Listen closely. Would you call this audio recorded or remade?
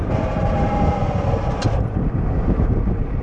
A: remade